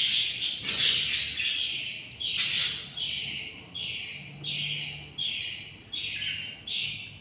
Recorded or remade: recorded